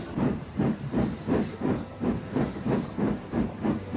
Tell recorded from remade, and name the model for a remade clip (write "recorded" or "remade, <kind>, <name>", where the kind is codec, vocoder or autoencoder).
remade, vocoder, BigVGAN v2